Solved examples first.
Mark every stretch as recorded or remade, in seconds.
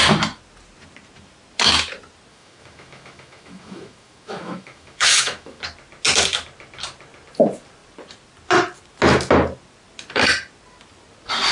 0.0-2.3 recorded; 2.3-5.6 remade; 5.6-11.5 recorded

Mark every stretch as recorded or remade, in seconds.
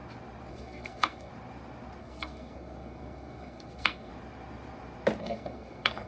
0.0-0.5 recorded; 0.5-1.3 remade; 1.3-2.0 recorded; 2.0-4.1 remade; 4.1-5.2 recorded; 5.2-6.1 remade